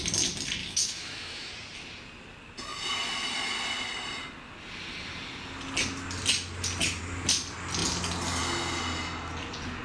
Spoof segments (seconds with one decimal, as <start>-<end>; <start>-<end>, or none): 0.6-1.5